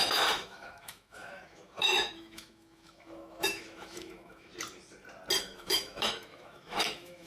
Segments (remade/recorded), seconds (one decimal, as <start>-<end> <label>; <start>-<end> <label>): 0.0-4.5 remade; 4.5-5.4 recorded; 5.4-7.3 remade